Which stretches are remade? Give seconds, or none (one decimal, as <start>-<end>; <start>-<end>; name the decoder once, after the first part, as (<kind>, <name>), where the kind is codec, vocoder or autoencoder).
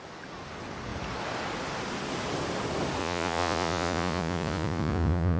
3.0-5.4 (vocoder, Vocos)